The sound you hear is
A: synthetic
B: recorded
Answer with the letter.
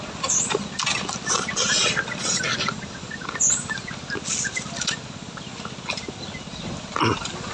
B